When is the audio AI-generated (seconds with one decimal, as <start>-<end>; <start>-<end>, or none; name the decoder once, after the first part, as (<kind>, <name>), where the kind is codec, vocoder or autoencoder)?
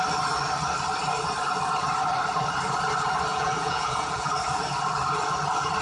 3.3-4.3 (vocoder, Vocos)